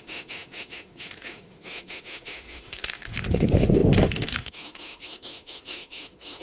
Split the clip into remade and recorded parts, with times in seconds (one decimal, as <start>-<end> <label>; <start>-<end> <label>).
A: 0.0-6.4 remade